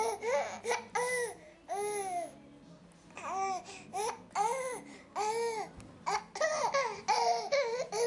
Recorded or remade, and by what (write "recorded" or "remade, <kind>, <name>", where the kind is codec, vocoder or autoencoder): recorded